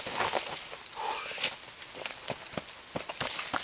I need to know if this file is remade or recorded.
recorded